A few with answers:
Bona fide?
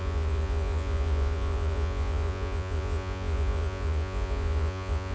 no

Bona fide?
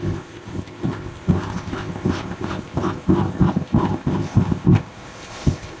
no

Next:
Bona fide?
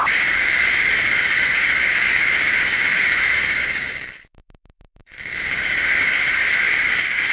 no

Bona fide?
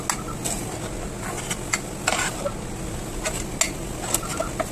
yes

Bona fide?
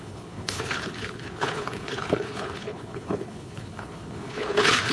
no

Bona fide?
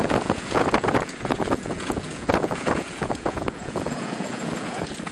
no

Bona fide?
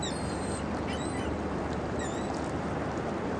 yes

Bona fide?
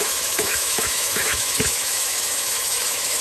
no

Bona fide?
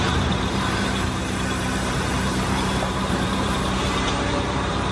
no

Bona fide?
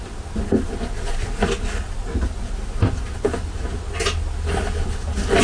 yes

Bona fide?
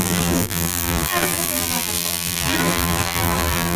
no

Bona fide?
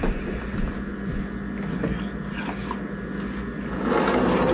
yes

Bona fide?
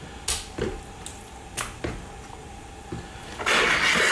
yes